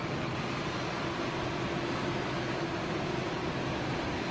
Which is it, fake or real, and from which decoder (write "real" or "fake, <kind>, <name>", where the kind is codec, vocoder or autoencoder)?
real